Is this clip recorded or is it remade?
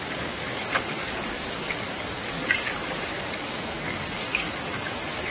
remade